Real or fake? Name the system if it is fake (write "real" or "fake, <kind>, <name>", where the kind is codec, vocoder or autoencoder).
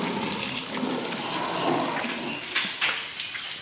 real